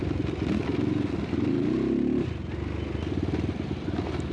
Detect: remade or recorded recorded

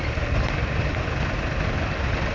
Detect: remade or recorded recorded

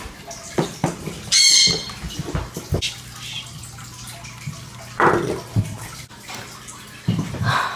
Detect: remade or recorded recorded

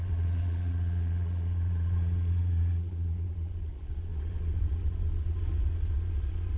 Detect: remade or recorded remade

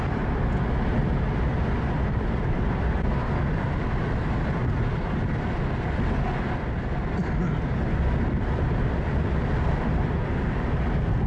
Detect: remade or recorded recorded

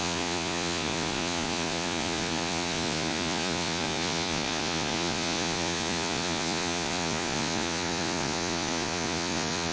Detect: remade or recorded remade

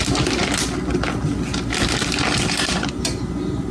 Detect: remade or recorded recorded